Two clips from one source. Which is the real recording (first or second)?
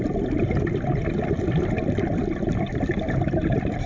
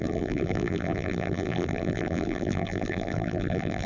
first